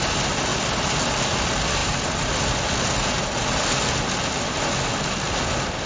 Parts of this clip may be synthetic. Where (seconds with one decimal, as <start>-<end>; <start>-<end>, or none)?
none